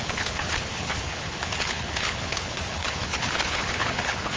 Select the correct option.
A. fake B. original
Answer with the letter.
A